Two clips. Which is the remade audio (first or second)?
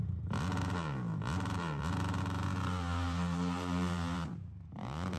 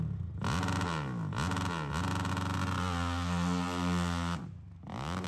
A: first